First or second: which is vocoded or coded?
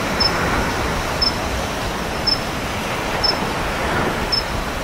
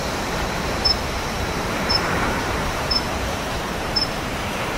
second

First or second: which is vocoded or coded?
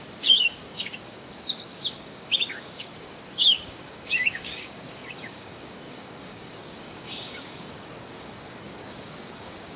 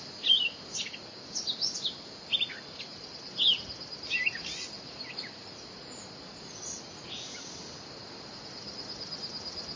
first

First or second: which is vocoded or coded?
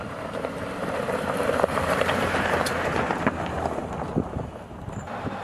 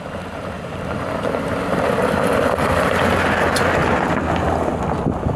first